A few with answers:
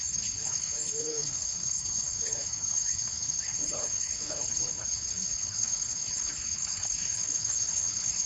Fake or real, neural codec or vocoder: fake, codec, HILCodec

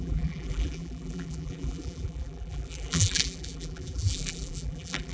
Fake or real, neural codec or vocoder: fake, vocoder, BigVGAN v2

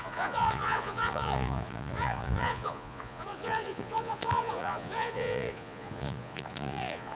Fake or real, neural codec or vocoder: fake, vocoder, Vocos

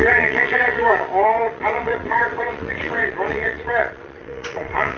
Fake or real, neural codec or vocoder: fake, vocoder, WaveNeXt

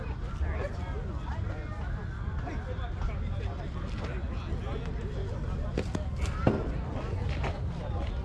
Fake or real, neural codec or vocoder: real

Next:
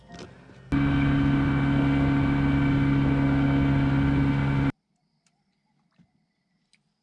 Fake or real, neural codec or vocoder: real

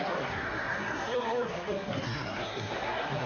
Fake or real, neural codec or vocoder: fake, codec, SNAC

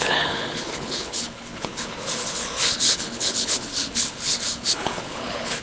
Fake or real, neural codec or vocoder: fake, codec, HILCodec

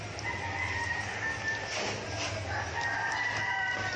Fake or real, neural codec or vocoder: real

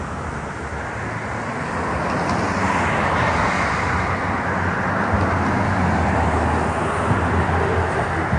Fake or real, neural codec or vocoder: real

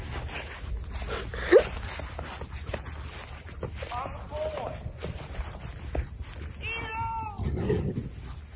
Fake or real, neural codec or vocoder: real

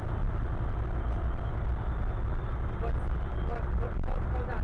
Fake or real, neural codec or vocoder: real